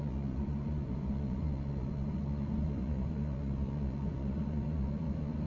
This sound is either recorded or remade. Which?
remade